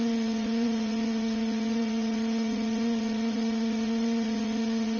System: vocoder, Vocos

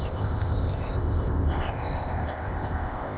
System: codec, ZipCodec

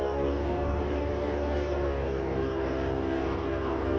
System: codec, DAC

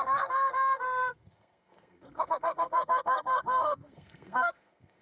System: codec, SNAC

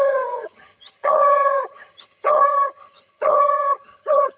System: vocoder, HiFi-GAN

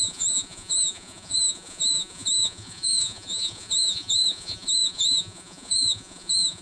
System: vocoder, Vocos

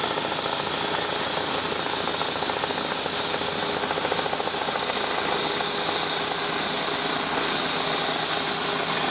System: none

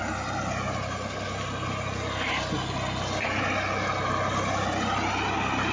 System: none